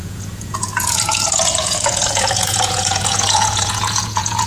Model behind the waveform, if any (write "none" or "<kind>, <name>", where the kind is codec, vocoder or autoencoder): vocoder, Vocos